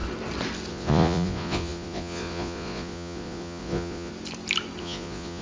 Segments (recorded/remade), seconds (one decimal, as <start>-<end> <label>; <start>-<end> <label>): 0.0-0.7 recorded; 0.7-4.1 remade; 4.1-4.8 recorded; 4.8-5.4 remade